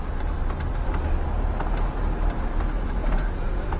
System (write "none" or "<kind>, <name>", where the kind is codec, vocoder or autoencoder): none